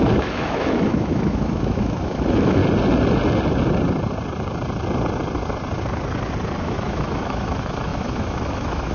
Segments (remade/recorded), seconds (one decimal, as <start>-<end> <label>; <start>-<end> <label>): 0.0-2.6 remade; 2.6-6.6 recorded; 6.6-8.9 remade